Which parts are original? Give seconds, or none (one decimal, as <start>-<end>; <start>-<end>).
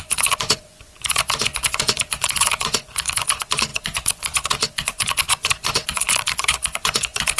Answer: none